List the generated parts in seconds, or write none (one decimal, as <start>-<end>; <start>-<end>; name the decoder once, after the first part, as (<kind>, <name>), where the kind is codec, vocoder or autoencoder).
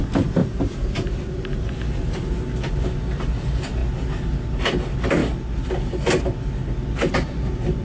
none